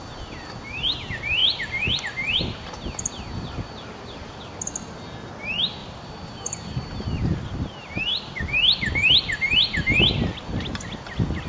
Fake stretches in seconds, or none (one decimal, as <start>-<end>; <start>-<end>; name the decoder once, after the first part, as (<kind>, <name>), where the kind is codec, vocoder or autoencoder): 5.8-6.9 (vocoder, BigVGAN v2)